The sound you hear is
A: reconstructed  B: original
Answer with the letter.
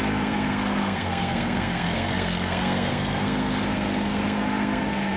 A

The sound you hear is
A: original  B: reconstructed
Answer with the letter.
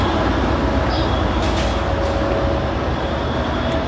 A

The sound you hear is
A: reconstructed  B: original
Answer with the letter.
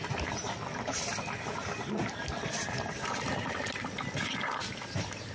B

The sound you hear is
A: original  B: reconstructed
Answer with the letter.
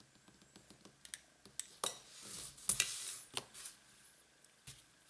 A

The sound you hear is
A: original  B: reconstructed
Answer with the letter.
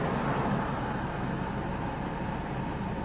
A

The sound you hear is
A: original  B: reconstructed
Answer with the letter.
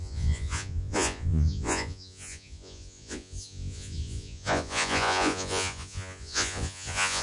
B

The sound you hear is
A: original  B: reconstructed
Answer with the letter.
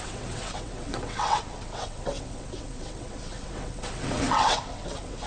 B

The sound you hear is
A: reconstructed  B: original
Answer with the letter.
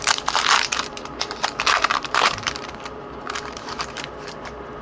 A